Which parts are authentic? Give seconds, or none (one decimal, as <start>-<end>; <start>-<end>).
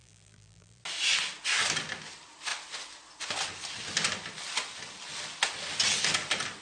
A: 0.8-6.6